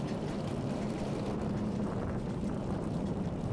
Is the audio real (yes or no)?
no